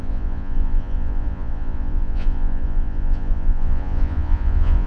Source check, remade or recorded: remade